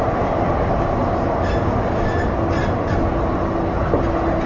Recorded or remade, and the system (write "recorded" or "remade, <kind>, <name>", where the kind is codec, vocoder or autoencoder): recorded